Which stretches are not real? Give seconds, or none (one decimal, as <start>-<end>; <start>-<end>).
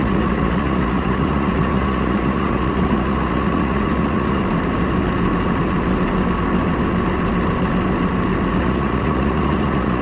0.0-4.4; 8.6-10.0